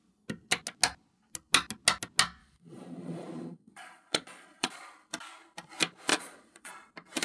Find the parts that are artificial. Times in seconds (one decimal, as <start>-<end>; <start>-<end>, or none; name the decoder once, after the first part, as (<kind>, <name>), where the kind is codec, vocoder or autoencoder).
2.4-4.7 (vocoder, Vocos); 6.1-6.7